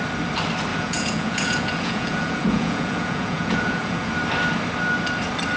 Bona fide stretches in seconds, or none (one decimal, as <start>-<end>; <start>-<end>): 0.0-0.7; 4.1-5.6